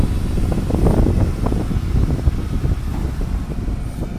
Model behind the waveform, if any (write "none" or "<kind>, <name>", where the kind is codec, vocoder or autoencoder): none